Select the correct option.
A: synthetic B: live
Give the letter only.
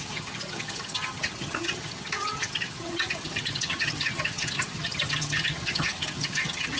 A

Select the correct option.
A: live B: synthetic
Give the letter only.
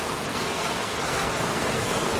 B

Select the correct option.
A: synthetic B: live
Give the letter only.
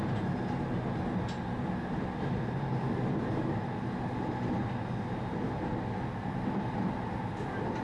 B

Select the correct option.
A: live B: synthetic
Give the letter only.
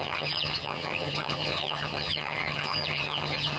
B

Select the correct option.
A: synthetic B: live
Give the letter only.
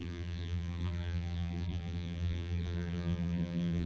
A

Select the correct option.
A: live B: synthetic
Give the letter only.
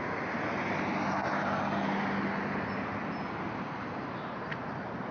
A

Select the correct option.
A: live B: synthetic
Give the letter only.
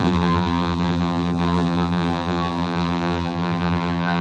B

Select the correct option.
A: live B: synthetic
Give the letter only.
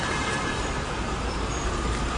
B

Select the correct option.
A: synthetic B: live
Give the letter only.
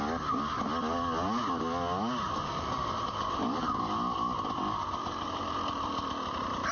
B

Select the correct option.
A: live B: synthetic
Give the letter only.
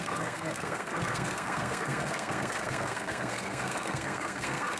B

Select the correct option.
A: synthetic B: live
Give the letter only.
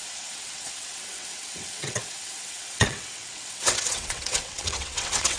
A